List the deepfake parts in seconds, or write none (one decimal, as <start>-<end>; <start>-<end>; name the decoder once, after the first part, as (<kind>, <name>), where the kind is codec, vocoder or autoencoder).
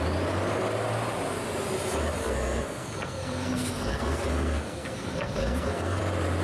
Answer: 2.2-6.0 (codec, SNAC)